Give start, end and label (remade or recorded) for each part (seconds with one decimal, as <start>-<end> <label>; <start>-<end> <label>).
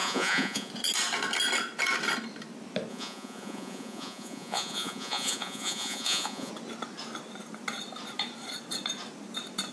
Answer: 0.0-0.7 remade; 0.7-2.9 recorded; 2.9-6.5 remade; 6.5-9.7 recorded